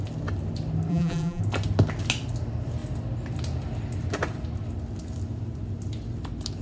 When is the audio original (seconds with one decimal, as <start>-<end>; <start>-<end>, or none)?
0.0-0.9; 1.4-6.6